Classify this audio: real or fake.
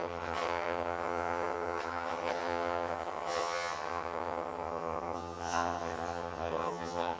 fake